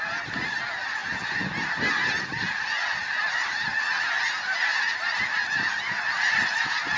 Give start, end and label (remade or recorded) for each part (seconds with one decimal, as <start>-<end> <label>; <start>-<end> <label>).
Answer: 0.0-7.0 recorded